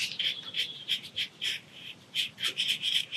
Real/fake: fake